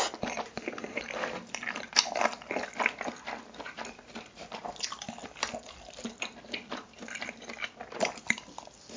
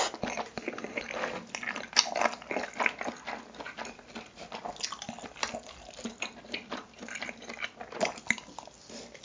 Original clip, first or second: second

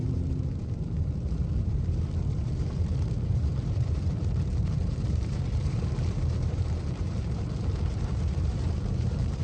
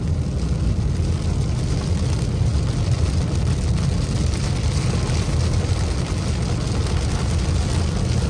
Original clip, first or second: second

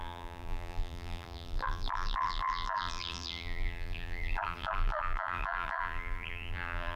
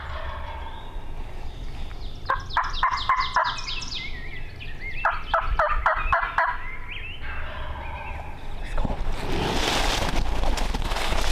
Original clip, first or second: second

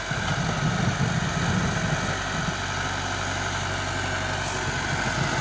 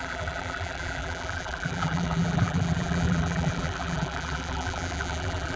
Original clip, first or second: first